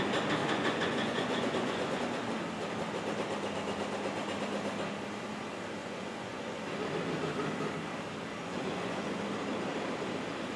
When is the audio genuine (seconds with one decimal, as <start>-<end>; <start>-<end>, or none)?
0.0-0.4; 2.0-5.8; 6.6-8.4; 9.2-10.6